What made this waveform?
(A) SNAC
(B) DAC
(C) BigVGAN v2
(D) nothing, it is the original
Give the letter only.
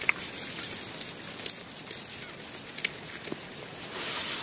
D